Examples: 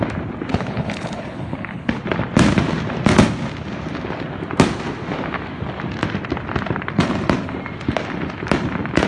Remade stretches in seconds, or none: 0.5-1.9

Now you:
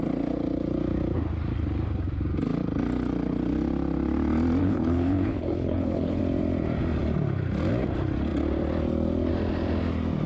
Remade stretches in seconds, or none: 4.6-6.2

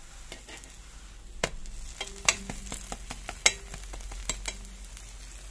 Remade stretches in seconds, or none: none